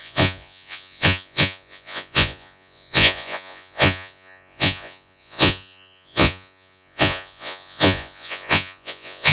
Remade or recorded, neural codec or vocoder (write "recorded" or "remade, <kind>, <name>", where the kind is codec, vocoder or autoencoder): remade, vocoder, Vocos